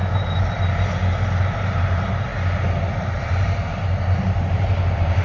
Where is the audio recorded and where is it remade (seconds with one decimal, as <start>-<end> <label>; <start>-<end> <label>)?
0.0-1.4 recorded; 1.4-2.3 remade; 2.3-2.9 recorded; 2.9-3.7 remade; 3.7-4.2 recorded; 4.2-5.2 remade